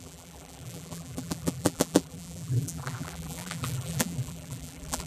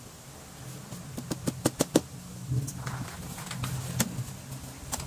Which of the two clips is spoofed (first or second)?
first